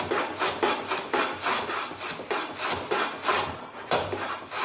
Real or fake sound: real